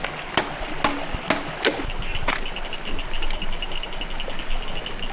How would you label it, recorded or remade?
recorded